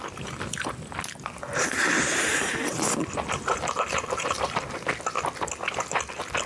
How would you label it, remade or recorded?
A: recorded